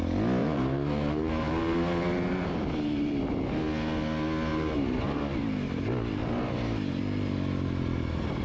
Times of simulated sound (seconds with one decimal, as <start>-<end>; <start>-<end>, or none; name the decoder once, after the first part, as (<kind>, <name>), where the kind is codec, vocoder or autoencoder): 0.4-3.2 (vocoder, BigVGAN v2); 4.5-5.8; 6.2-7.0